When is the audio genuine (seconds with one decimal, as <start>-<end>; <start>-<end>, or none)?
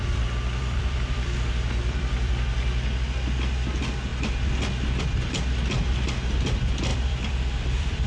0.0-0.6; 2.3-6.9